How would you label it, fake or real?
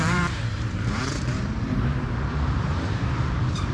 fake